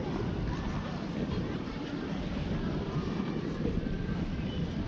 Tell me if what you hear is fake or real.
fake